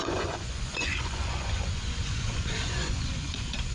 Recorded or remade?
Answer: remade